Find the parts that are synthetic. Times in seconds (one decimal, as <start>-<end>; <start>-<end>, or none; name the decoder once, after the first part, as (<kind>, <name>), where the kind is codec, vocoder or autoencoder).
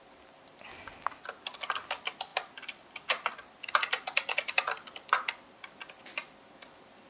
none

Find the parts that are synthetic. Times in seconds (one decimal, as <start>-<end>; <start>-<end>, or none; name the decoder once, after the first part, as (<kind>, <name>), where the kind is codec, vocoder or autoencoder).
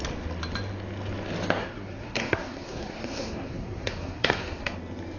1.6-4.7 (codec, SNAC)